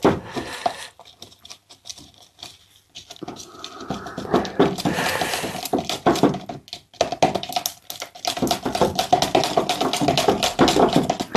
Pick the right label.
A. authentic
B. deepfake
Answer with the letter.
A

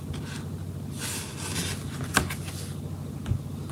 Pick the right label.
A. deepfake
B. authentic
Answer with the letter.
B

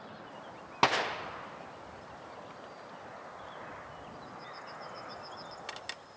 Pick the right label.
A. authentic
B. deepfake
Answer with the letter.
A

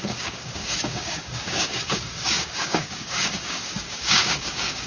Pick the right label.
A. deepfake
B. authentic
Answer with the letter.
A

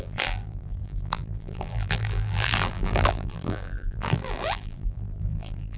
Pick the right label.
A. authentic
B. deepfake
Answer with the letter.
B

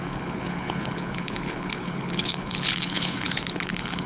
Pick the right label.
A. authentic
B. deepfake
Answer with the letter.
B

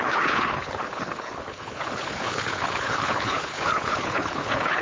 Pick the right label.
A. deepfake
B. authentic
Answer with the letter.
A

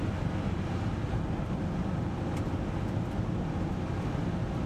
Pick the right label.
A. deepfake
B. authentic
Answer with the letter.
B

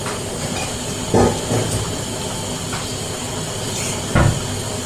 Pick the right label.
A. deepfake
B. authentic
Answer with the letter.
B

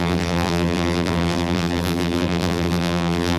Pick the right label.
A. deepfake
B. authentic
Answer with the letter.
A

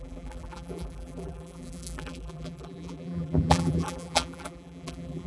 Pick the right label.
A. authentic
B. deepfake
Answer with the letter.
B